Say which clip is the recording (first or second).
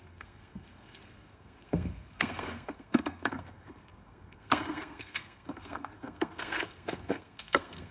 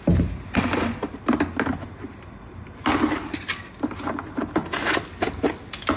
second